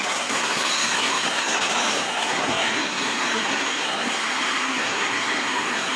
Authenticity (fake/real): fake